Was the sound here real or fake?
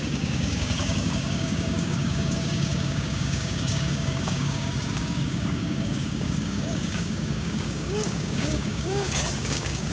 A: fake